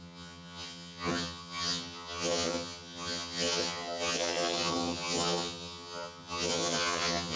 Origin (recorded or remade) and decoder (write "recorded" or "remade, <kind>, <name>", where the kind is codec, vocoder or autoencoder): remade, vocoder, HiFi-GAN